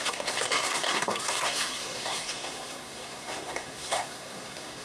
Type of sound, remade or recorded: remade